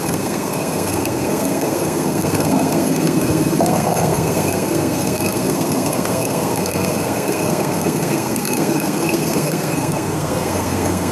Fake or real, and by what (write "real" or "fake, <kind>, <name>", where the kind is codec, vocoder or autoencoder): fake, codec, SNAC